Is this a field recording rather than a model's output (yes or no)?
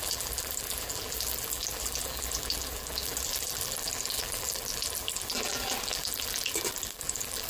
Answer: no